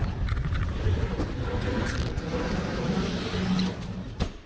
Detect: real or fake real